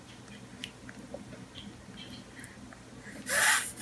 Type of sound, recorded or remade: recorded